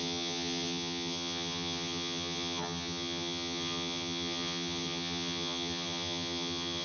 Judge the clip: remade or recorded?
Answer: remade